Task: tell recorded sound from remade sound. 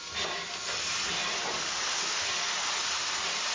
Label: recorded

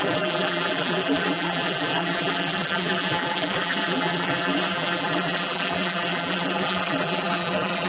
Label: remade